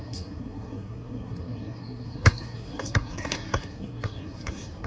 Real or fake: fake